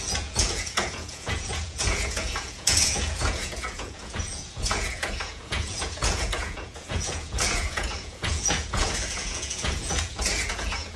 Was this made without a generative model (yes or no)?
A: no